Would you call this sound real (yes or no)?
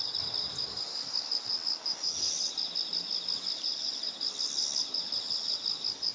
yes